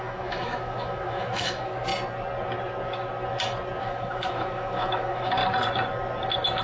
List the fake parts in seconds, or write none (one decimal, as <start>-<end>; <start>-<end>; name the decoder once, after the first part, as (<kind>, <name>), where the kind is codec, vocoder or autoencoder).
0.0-1.9 (autoencoder, DAC-VAE); 3.8-5.4